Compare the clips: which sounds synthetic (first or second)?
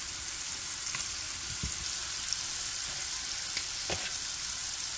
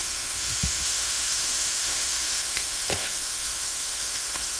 second